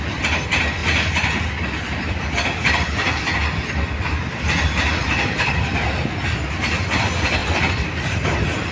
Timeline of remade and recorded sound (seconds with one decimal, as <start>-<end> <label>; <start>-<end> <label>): 0.0-0.8 recorded; 0.8-1.4 remade; 1.4-7.4 recorded; 7.4-8.0 remade; 8.0-8.7 recorded